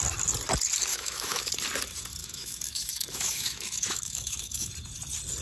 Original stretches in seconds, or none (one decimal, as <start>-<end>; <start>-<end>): 0.0-0.9; 1.5-2.2; 4.7-5.4